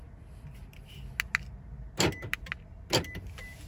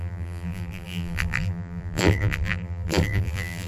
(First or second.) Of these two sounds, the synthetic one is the second